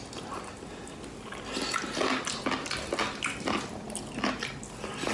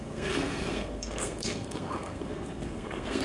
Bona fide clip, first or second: first